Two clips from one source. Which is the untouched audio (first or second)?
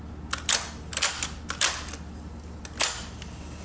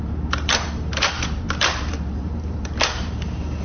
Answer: first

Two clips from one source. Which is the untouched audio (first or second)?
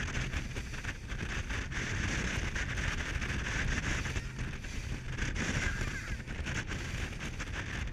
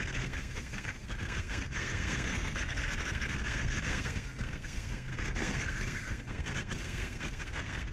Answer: first